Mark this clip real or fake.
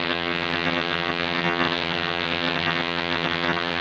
fake